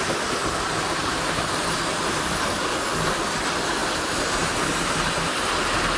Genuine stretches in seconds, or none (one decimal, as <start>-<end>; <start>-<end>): 0.0-1.0; 1.8-3.8; 5.5-6.0